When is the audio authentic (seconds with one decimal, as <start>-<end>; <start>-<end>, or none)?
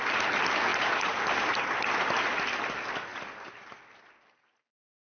0.0-0.7; 1.7-5.0